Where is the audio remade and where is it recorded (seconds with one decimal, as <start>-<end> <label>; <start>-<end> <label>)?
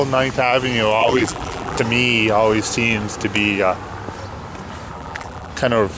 0.0-1.0 recorded; 1.0-1.8 remade; 1.8-4.9 recorded; 4.9-5.5 remade; 5.5-6.0 recorded